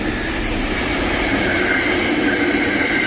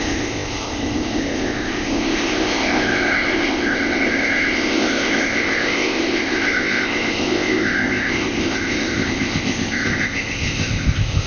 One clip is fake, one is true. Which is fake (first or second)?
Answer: second